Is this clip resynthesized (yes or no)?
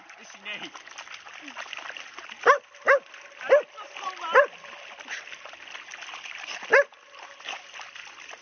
no